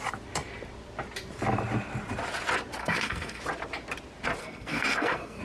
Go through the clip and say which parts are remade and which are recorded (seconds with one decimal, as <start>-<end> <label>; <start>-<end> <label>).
0.0-2.8 recorded; 2.8-3.4 remade; 3.4-4.4 recorded; 4.4-5.4 remade